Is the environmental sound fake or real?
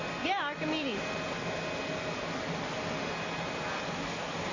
real